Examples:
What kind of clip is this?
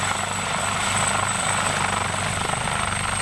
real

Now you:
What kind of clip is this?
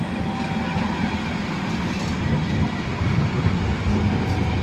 real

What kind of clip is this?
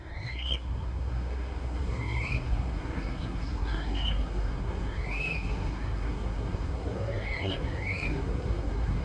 fake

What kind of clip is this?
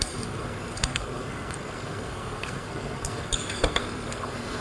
fake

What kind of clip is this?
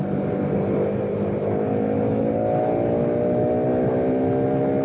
real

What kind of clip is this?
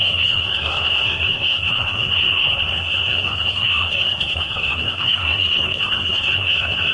fake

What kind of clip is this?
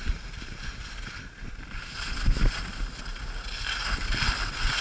real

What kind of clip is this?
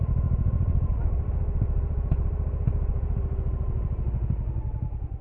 real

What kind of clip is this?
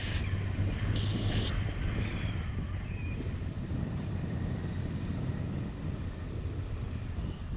real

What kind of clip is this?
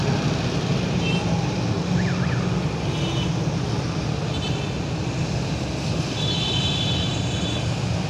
real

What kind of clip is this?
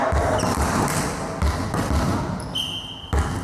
real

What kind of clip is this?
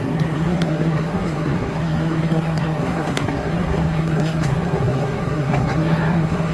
fake